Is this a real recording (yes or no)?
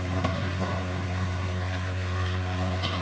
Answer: no